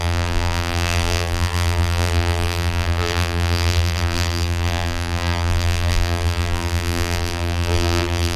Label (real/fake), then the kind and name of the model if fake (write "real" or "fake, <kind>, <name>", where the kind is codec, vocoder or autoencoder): fake, vocoder, BigVGAN v2